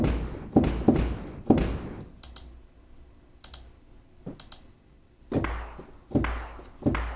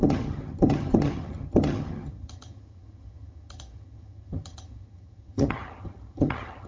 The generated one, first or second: second